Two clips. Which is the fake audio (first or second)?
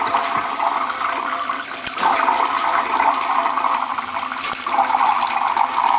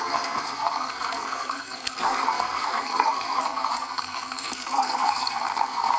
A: second